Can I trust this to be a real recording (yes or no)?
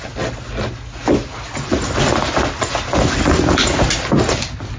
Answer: yes